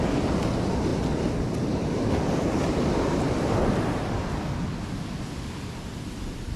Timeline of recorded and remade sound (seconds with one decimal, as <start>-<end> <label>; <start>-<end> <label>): 0.0-6.6 recorded

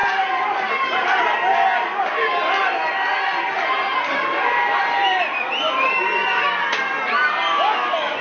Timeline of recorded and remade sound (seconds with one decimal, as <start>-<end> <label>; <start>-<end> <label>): 0.0-1.2 remade; 1.2-7.2 recorded; 7.2-8.2 remade

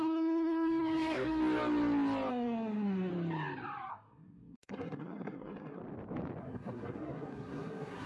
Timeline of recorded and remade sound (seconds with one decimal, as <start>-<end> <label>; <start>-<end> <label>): 0.0-1.4 remade; 1.4-2.3 recorded; 2.3-3.1 remade; 3.1-3.9 recorded; 3.9-5.8 remade; 5.8-6.4 recorded; 6.4-8.1 remade

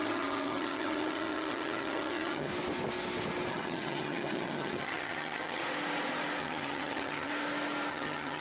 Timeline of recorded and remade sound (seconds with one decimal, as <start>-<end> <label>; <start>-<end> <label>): 0.0-2.5 remade; 2.5-3.5 recorded; 3.5-5.6 remade; 5.6-6.4 recorded; 6.4-7.3 remade; 7.3-7.9 recorded; 7.9-8.4 remade

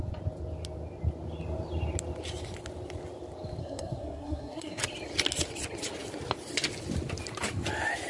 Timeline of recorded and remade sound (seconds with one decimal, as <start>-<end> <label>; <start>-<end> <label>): 0.0-3.6 recorded; 3.6-4.8 remade; 4.8-8.1 recorded

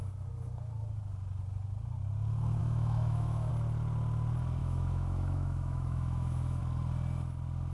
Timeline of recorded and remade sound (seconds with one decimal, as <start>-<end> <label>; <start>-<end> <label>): 0.0-2.6 recorded; 2.6-3.5 remade; 3.5-4.6 recorded; 4.6-6.6 remade; 6.6-7.7 recorded

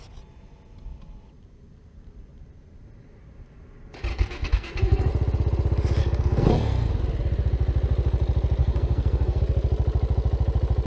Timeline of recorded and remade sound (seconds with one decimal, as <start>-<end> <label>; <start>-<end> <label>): 0.0-4.1 recorded; 4.1-5.1 remade; 5.1-6.0 recorded; 6.0-6.9 remade; 6.9-8.6 recorded; 8.6-9.4 remade; 9.4-10.9 recorded

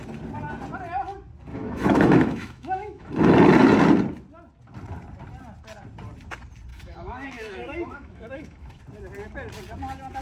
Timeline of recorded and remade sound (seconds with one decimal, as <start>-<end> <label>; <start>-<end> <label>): 0.0-1.5 recorded; 1.5-3.1 remade; 3.1-6.7 recorded; 6.7-8.8 remade; 8.8-10.2 recorded